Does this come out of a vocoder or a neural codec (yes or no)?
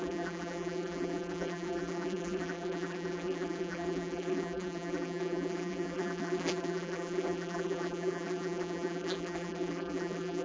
yes